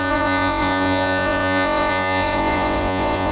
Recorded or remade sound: remade